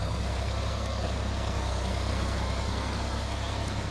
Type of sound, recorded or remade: remade